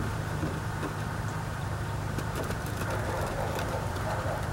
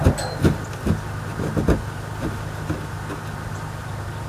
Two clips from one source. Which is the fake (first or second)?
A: first